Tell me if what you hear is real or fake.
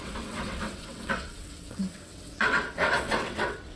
fake